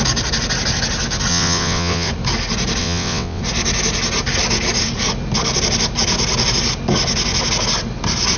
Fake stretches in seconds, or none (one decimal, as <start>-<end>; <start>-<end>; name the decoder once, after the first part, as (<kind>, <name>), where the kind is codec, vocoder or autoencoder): 1.3-2.1 (vocoder, WaveNeXt); 2.8-3.4